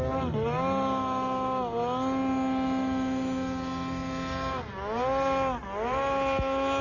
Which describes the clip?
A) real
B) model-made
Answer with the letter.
A